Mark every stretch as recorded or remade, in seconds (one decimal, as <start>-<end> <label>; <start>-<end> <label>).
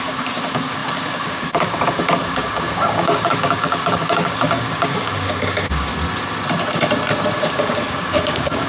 0.0-5.9 remade; 5.9-7.4 recorded; 7.4-8.7 remade